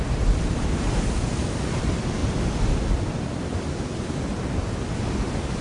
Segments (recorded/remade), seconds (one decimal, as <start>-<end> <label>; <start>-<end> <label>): 0.0-5.6 recorded